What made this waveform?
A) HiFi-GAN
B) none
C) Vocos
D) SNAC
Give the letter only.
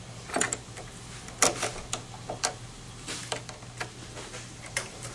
B